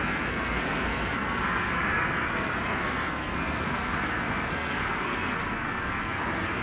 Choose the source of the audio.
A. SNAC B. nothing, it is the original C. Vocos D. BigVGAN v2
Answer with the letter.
A